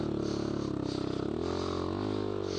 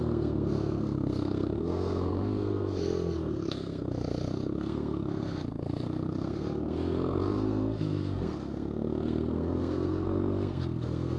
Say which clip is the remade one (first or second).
second